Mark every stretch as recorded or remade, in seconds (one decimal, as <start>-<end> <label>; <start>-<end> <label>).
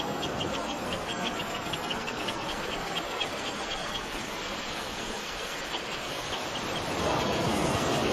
0.0-6.4 remade; 6.4-7.0 recorded; 7.0-8.1 remade